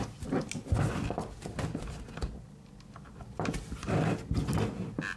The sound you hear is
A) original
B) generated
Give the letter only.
A